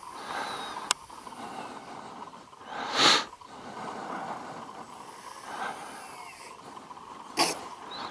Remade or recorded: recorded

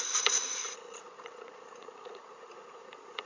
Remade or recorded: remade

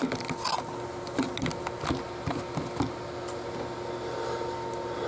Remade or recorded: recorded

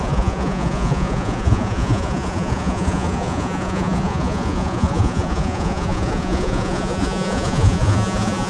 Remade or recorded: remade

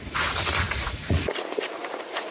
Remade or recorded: remade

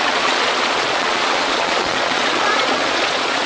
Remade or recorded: remade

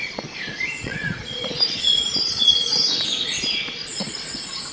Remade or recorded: remade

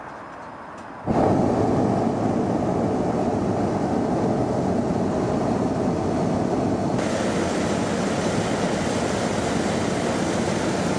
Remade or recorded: recorded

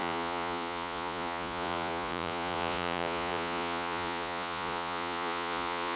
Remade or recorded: remade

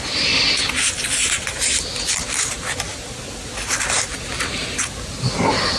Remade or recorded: recorded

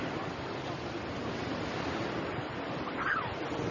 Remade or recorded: recorded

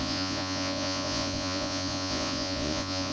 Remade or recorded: remade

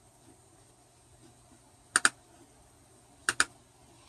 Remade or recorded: recorded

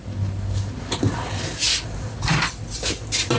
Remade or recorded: recorded